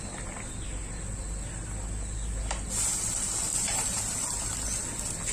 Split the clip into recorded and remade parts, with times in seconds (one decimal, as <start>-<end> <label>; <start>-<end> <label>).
0.0-3.5 recorded; 3.5-4.0 remade; 4.0-5.3 recorded